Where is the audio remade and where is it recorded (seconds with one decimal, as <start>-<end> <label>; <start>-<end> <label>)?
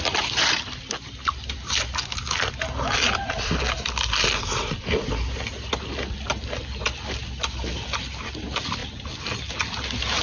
0.0-10.2 recorded